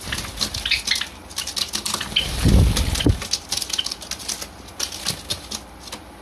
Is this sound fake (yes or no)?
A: no